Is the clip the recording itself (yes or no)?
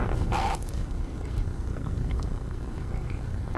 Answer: no